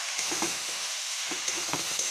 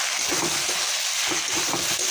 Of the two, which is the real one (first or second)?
second